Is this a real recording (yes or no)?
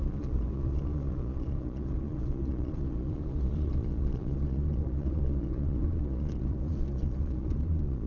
no